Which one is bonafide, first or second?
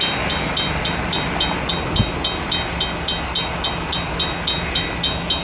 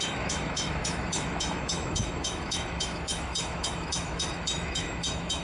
first